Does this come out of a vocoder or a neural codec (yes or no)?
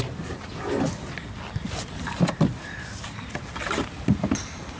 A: no